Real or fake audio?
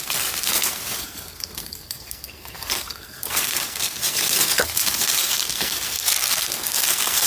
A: fake